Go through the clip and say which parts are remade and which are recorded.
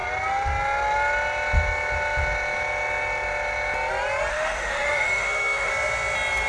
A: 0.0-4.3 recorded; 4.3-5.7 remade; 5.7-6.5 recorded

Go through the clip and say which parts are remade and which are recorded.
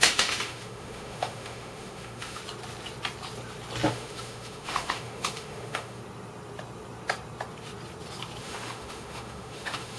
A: 0.0-2.4 remade; 2.4-3.9 recorded; 3.9-6.0 remade; 6.0-8.4 recorded; 8.4-10.0 remade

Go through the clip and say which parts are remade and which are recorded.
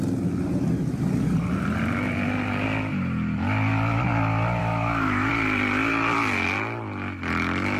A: 0.0-4.6 recorded; 4.6-5.3 remade; 5.3-7.8 recorded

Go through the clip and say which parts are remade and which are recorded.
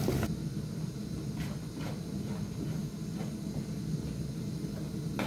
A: 0.0-5.3 recorded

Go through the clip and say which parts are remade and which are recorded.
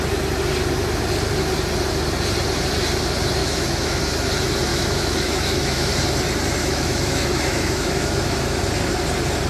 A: 0.0-3.4 recorded; 3.4-4.0 remade; 4.0-4.7 recorded; 4.7-5.9 remade; 5.9-6.6 recorded; 6.6-8.6 remade; 8.6-9.5 recorded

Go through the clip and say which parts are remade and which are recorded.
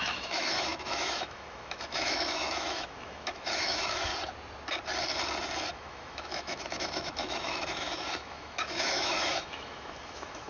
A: 0.0-4.1 remade; 4.1-5.7 recorded; 5.7-10.5 remade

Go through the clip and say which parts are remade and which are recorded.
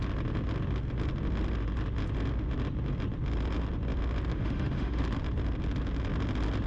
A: 0.0-4.3 recorded; 4.3-5.0 remade; 5.0-6.7 recorded